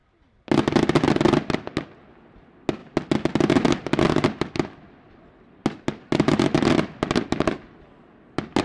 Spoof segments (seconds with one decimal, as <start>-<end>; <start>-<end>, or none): none